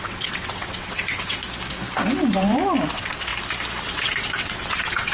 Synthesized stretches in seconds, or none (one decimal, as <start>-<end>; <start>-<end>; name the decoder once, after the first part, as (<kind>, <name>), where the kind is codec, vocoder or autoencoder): 0.0-1.4 (vocoder, WaveNeXt); 2.9-3.3; 3.8-5.1

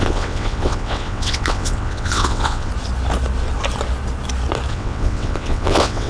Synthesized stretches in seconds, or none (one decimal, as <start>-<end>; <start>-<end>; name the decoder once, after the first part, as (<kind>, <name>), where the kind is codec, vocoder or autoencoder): 0.0-2.7 (vocoder, WaveNeXt); 4.7-6.1

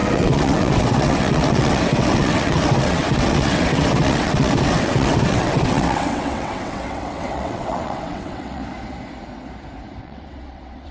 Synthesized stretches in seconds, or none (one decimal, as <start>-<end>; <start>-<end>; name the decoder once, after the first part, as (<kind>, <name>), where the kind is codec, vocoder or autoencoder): 0.0-8.6 (vocoder, WaveNeXt); 10.0-10.9

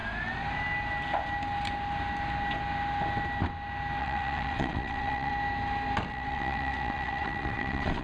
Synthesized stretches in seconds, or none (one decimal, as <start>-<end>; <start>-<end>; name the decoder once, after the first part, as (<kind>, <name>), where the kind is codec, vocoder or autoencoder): 4.0-5.3 (vocoder, WaveNeXt); 6.1-8.0

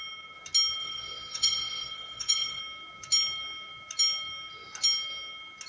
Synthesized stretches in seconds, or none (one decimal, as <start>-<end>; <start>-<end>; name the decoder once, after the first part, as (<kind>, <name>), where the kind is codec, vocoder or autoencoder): 0.8-2.6 (vocoder, WaveNeXt)

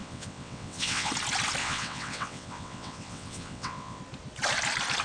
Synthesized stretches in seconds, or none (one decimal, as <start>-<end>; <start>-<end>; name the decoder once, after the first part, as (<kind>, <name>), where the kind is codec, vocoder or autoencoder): 0.0-1.1 (vocoder, WaveNeXt); 1.6-4.0